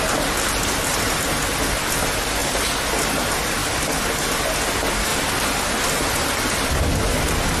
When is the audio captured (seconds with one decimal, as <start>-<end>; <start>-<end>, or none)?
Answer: 0.0-7.6